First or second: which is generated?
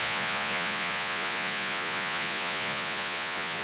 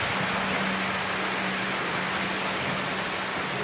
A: first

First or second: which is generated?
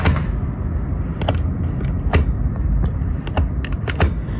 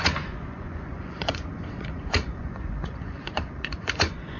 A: second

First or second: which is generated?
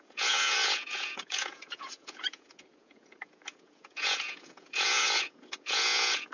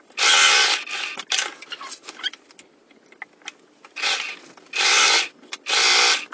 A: first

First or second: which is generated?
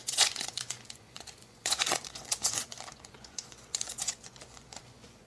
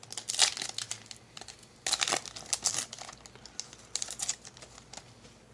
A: first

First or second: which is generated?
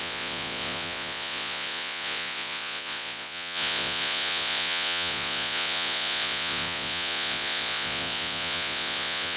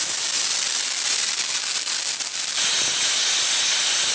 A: first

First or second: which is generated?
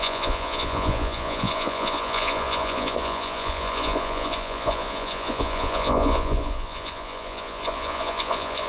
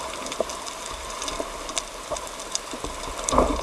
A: first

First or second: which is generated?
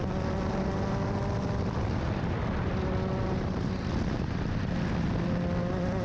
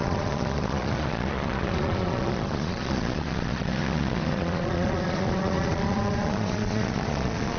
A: second